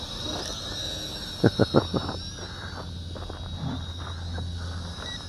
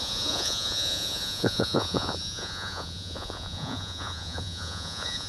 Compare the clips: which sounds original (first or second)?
first